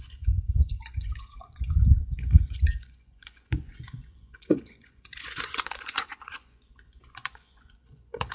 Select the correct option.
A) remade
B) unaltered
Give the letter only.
A